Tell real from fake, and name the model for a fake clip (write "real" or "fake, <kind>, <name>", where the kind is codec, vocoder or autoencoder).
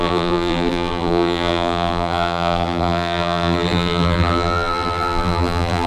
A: fake, vocoder, BigVGAN v2